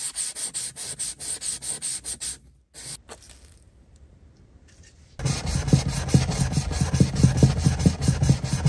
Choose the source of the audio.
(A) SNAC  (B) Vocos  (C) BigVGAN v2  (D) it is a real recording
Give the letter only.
D